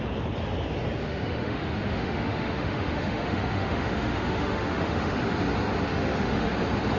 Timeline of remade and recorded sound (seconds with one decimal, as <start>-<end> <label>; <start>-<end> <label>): 0.0-1.0 recorded; 1.0-5.2 remade; 5.2-5.9 recorded; 5.9-6.5 remade; 6.5-7.0 recorded